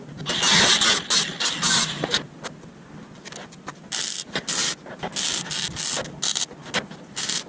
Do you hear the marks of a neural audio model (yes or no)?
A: no